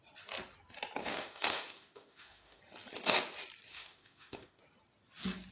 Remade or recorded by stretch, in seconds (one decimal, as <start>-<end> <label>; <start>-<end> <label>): 0.0-1.0 recorded; 1.0-2.6 remade; 2.6-3.7 recorded; 3.7-4.6 remade; 4.6-5.5 recorded

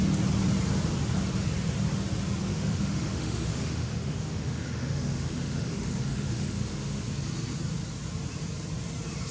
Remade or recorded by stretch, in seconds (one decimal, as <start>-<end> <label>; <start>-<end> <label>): 0.0-2.5 recorded; 2.5-7.0 remade; 7.0-9.3 recorded

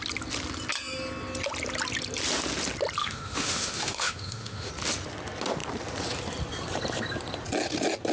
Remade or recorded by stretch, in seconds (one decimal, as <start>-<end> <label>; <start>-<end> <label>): 0.0-3.0 recorded; 3.0-4.7 remade; 4.7-8.1 recorded

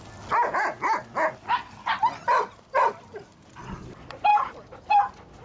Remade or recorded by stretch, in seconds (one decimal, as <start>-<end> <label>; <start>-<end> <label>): 0.0-5.4 recorded

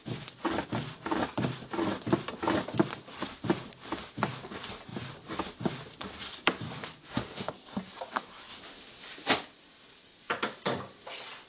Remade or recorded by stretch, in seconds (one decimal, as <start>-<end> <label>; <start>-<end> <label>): 0.0-7.0 recorded; 7.0-7.5 remade; 7.5-11.5 recorded

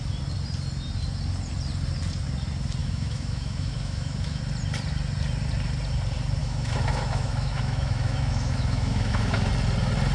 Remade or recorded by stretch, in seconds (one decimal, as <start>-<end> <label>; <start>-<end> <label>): 0.0-2.8 recorded; 2.8-4.4 remade; 4.4-6.4 recorded; 6.4-9.5 remade; 9.5-10.1 recorded